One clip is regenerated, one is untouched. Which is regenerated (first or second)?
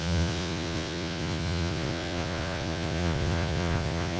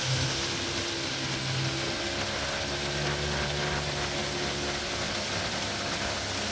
first